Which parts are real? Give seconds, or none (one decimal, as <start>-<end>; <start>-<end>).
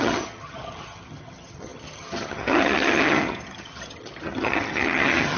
none